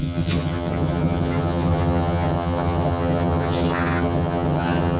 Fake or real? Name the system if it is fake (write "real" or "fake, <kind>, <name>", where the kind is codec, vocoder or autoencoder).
fake, vocoder, HiFi-GAN